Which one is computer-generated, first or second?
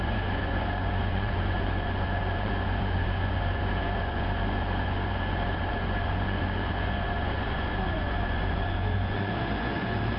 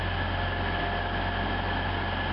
first